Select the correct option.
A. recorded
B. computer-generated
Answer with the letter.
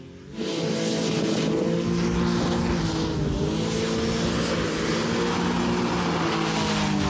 A